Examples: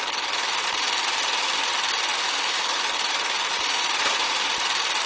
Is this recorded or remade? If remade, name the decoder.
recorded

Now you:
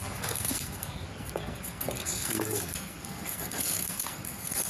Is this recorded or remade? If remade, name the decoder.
remade, codec, SNAC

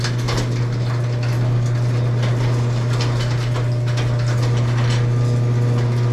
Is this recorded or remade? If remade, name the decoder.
recorded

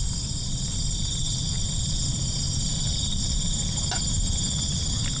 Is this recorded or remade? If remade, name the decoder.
recorded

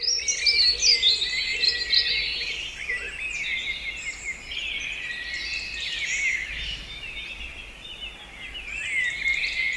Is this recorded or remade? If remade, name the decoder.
recorded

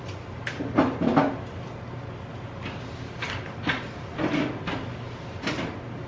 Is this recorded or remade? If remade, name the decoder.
recorded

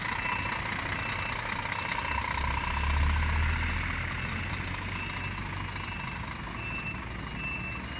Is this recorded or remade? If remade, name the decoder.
recorded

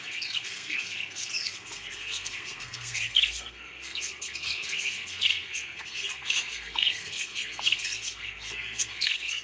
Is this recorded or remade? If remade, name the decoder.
remade, codec, SNAC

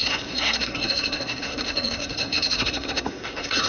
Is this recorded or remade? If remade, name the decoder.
remade, codec, SNAC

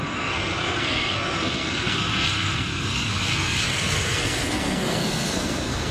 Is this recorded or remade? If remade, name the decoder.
remade, codec, SNAC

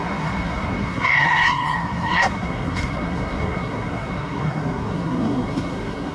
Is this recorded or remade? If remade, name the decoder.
remade, codec, SNAC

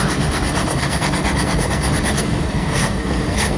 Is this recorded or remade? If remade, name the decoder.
remade, codec, SNAC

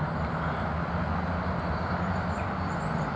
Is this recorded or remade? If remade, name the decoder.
recorded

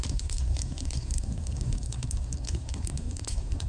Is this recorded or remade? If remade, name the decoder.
remade, codec, SNAC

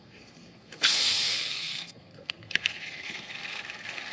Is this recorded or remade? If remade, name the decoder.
remade, codec, SNAC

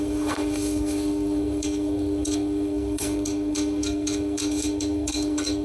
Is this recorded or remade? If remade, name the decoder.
remade, codec, SNAC